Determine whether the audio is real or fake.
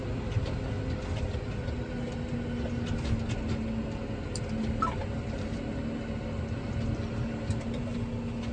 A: real